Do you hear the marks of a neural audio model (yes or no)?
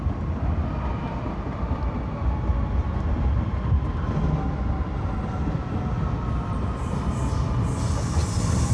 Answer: no